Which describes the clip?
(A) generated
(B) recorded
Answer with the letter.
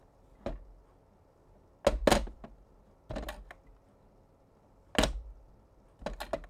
B